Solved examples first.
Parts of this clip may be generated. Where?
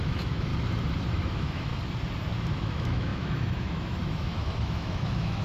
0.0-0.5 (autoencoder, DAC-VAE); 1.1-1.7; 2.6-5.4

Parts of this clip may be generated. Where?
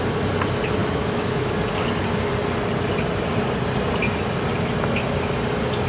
0.8-1.5 (autoencoder, DAC-VAE)